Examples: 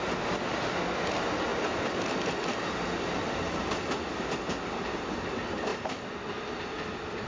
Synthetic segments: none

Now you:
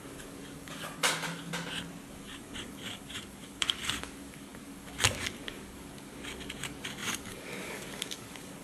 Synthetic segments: 0.0-1.5 (codec, DAC); 2.1-8.6

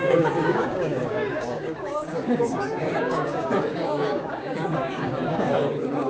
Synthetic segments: 0.0-6.1 (codec, DAC)

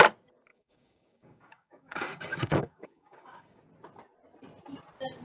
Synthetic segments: 0.5-3.6 (codec, DAC)